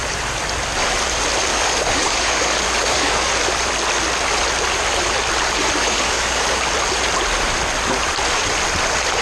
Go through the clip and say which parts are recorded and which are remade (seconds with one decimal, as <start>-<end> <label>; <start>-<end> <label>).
0.0-1.5 recorded; 1.5-3.3 remade; 3.3-5.8 recorded; 5.8-6.6 remade; 6.6-9.2 recorded